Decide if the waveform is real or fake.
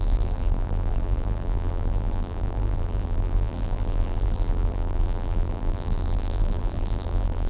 fake